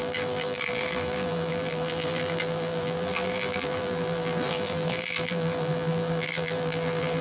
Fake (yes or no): yes